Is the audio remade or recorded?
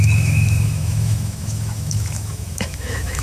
remade